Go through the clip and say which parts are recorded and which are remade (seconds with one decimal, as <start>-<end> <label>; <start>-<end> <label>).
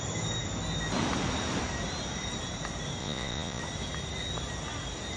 0.0-3.0 recorded; 3.0-3.6 remade; 3.6-5.2 recorded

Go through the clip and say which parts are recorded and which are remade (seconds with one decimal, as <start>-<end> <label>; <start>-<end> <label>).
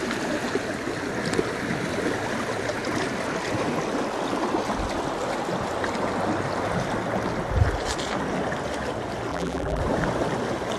0.0-9.3 recorded; 9.3-9.8 remade; 9.8-10.8 recorded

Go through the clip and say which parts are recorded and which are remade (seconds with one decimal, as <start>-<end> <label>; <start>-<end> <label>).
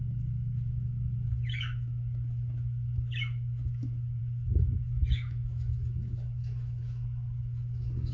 0.0-8.1 remade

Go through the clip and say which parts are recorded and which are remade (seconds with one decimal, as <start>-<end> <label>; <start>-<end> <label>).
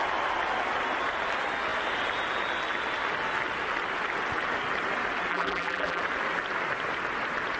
0.0-5.3 recorded; 5.3-6.0 remade; 6.0-7.6 recorded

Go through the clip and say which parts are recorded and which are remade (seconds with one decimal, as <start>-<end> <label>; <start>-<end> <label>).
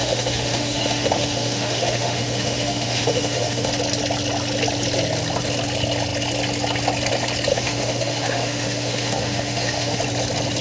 0.0-3.7 remade; 3.7-7.5 recorded; 7.5-10.0 remade; 10.0-10.6 recorded